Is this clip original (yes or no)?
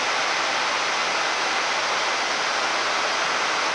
yes